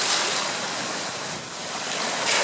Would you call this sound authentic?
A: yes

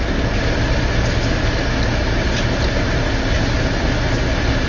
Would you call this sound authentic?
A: yes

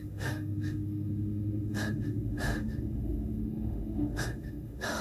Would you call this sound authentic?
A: no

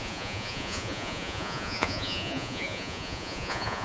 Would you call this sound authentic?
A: no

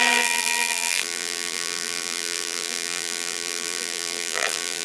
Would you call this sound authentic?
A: no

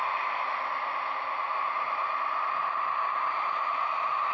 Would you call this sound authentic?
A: yes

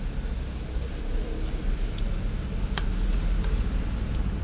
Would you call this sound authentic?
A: yes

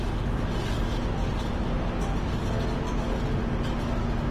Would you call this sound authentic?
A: yes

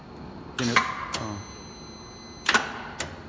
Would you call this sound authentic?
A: yes